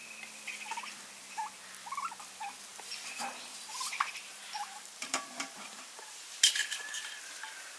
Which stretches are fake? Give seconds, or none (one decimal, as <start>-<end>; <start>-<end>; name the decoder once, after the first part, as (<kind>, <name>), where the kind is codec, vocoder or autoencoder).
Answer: 2.7-6.8 (vocoder, BigVGAN v2)